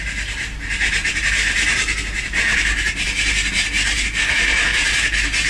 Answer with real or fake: fake